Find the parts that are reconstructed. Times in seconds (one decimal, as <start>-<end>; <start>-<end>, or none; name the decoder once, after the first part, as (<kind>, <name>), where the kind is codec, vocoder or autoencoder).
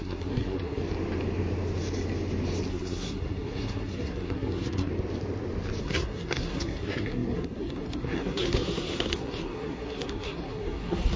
0.0-0.8 (codec, SNAC); 2.7-4.9; 5.8-11.2